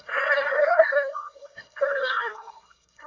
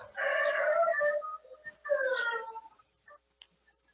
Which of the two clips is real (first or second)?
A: second